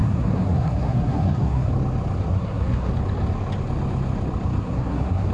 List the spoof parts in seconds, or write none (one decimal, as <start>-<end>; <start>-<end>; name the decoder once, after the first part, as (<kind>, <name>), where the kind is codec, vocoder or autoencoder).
0.0-1.7 (codec, SNAC); 2.3-2.9; 4.6-5.3